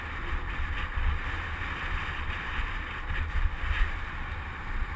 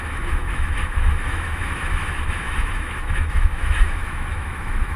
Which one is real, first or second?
first